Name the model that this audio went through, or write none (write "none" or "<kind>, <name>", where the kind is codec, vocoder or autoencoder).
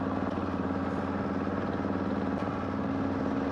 none